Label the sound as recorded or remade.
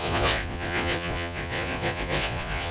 remade